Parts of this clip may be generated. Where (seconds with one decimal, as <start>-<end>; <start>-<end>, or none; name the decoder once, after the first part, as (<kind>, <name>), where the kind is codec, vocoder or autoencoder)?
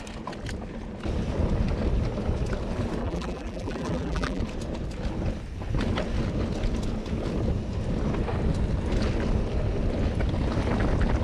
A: 3.0-4.4 (vocoder, BigVGAN v2)